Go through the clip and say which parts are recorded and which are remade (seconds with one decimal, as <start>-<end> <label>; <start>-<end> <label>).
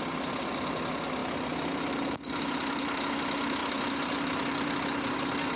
0.0-1.2 recorded; 1.2-3.0 remade; 3.0-3.6 recorded; 3.6-5.6 remade